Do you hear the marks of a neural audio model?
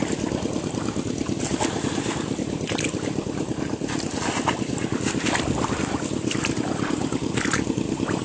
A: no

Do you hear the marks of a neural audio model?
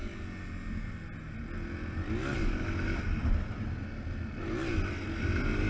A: no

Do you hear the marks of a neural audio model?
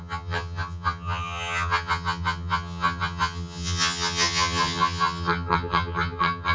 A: yes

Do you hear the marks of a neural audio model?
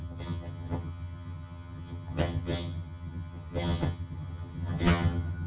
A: yes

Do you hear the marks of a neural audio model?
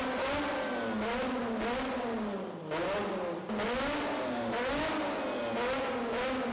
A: no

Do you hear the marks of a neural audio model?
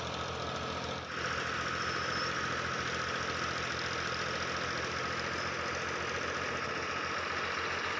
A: no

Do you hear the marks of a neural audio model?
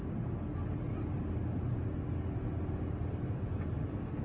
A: no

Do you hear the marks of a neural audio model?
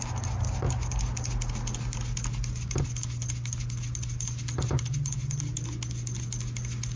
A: no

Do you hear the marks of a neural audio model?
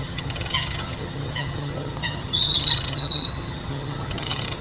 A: yes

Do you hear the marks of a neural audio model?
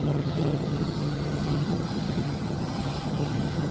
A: yes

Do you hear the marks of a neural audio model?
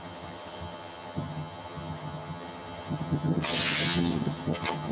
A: yes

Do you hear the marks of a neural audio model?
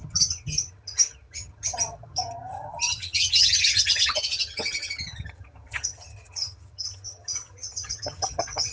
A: yes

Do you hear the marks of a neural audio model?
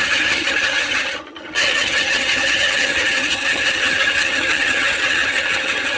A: yes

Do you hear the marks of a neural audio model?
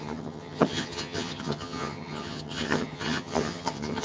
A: yes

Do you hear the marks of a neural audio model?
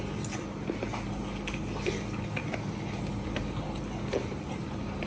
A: no